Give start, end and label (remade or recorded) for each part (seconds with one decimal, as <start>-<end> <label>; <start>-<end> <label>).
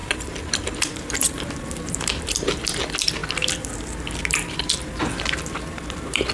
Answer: 0.0-3.2 remade; 3.2-4.2 recorded; 4.2-4.8 remade; 4.8-5.4 recorded; 5.4-6.3 remade